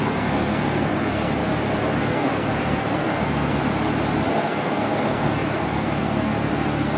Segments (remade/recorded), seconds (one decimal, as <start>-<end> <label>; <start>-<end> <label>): 0.0-1.4 remade; 1.4-2.0 recorded; 2.0-3.6 remade; 3.6-4.3 recorded; 4.3-7.0 remade